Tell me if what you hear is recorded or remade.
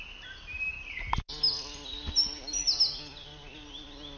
recorded